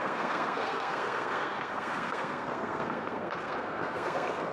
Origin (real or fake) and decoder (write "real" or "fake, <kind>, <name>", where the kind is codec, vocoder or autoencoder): fake, codec, SNAC